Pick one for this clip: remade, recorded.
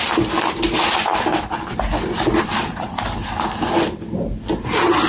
recorded